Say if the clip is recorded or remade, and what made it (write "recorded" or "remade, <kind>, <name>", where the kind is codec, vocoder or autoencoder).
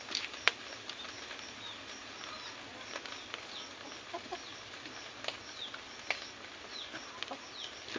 recorded